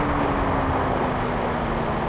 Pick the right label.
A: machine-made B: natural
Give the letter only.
B